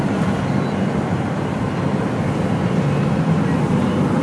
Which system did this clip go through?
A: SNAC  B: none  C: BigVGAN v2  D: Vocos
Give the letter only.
B